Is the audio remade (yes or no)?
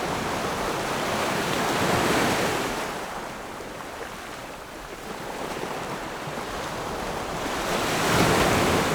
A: no